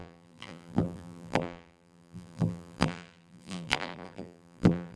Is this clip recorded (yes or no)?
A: no